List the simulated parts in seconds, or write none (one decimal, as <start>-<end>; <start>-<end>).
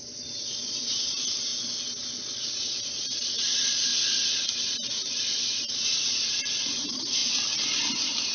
0.0-1.5; 2.8-3.9; 4.7-7.2; 7.9-8.3